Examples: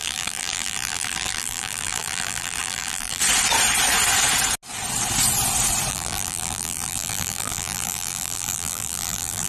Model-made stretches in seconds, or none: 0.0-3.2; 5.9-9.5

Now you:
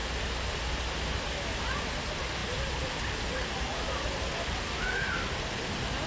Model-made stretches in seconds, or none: none

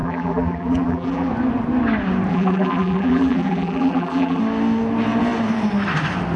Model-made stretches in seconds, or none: 0.0-1.3; 2.3-4.4

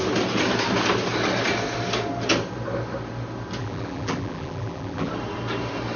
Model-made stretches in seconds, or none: 3.6-5.1

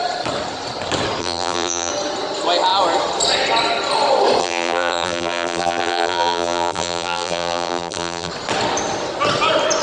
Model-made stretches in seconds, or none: 1.2-1.9; 4.4-8.3

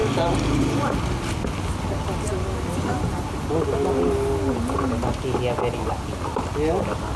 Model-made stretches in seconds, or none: none

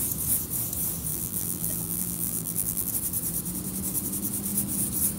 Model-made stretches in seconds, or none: 1.1-2.9

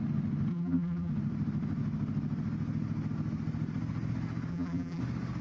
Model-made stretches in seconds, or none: 0.5-1.1; 4.5-5.0